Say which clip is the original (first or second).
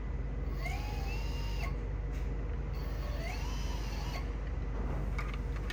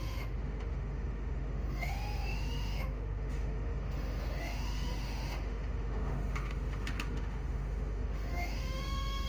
first